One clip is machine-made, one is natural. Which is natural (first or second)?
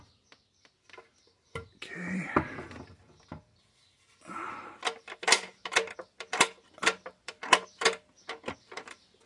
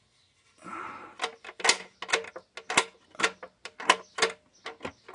second